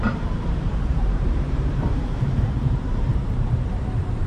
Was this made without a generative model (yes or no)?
no